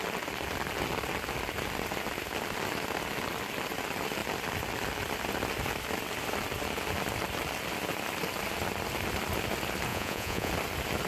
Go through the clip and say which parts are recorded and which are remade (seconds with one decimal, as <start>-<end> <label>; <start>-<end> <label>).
0.0-9.9 recorded; 9.9-10.5 remade; 10.5-11.1 recorded